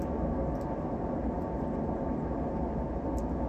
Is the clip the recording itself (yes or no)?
yes